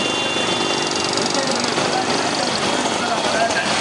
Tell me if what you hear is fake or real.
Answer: real